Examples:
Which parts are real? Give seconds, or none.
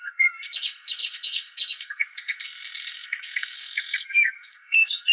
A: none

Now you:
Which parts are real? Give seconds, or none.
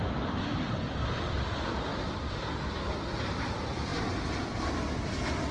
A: 3.9-4.6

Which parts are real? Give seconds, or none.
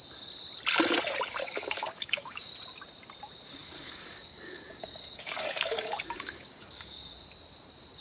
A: 0.0-1.4; 2.5-3.6; 7.1-8.0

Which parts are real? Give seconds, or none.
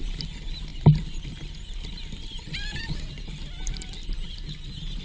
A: 0.0-0.7; 2.8-5.0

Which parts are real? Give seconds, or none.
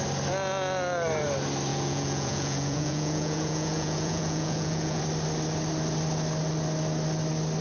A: 0.0-1.7; 5.0-7.6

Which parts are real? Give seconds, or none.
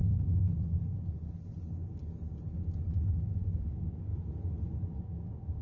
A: 0.0-3.4; 4.1-5.0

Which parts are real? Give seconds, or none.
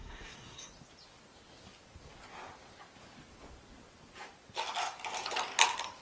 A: 0.7-6.0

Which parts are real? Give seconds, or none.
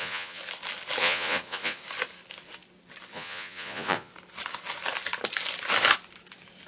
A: 0.4-1.0; 1.8-3.1; 4.1-6.7